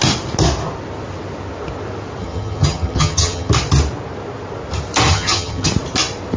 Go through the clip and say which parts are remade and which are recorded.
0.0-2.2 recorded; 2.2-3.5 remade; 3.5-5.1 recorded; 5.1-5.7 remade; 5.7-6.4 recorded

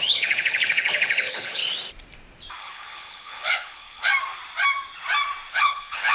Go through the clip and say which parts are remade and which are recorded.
0.0-1.6 remade; 1.6-2.6 recorded; 2.6-4.1 remade; 4.1-5.5 recorded; 5.5-6.1 remade